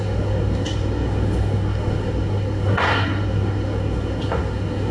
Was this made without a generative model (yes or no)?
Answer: no